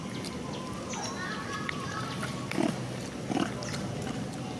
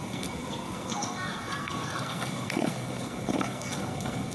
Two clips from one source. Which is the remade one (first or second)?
second